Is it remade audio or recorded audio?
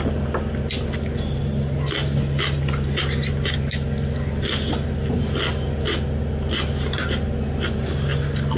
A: remade